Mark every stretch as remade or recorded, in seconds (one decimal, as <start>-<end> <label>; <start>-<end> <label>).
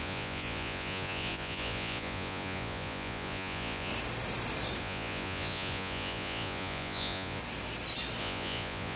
0.0-3.9 remade; 3.9-4.8 recorded; 4.8-7.4 remade; 7.4-8.2 recorded; 8.2-9.0 remade